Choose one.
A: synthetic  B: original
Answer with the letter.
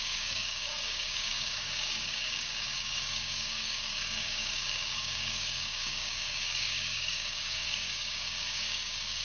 A